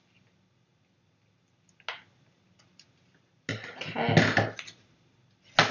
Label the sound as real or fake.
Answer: real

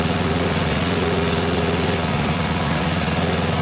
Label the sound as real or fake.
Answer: fake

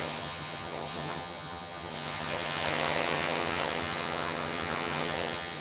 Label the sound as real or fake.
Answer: fake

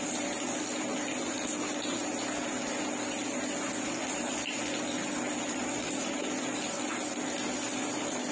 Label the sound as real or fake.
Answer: real